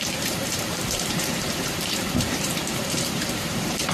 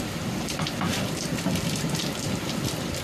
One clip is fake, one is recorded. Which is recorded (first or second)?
second